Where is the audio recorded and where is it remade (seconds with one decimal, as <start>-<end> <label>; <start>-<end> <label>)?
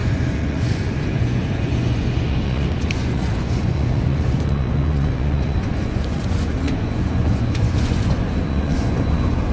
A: 0.0-9.5 remade